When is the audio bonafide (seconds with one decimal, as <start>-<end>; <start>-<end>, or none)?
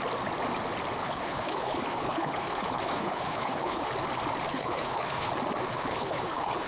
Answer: 0.0-1.0; 3.9-4.5; 5.3-5.7